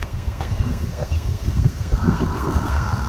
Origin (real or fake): fake